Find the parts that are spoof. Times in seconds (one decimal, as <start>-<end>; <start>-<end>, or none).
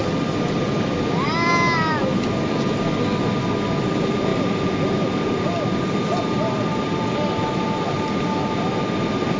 none